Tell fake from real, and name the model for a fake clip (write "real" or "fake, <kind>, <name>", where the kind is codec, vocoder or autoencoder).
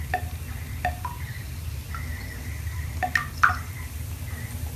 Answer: real